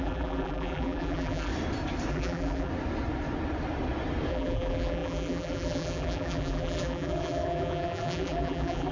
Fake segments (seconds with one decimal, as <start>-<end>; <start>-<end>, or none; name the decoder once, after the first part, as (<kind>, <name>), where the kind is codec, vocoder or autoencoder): 0.0-1.5 (vocoder, BigVGAN v2); 2.1-2.7; 4.3-8.9